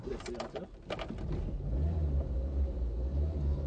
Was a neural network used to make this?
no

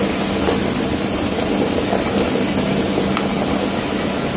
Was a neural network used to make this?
no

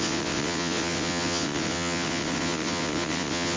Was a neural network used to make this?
yes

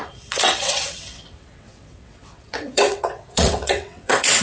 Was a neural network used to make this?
yes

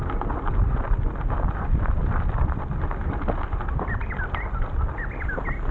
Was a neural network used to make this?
no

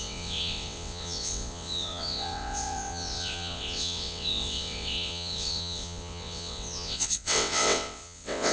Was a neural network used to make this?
yes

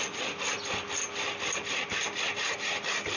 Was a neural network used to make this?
no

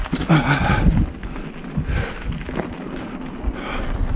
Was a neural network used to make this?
no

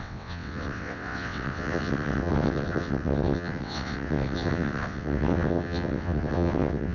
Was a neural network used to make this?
yes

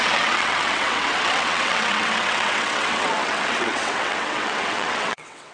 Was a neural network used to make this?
yes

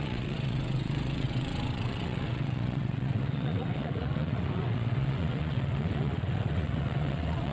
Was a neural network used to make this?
yes